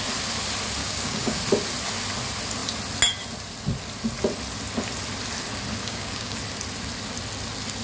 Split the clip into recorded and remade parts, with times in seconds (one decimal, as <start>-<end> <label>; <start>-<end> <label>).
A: 0.0-0.8 recorded; 0.8-1.4 remade; 1.4-5.8 recorded; 5.8-6.4 remade; 6.4-7.8 recorded